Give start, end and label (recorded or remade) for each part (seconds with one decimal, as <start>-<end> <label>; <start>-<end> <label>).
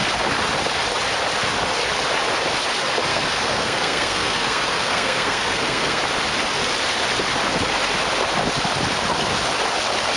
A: 0.0-3.1 recorded; 3.1-6.0 remade; 6.0-10.2 recorded